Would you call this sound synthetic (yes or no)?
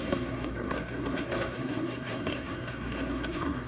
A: yes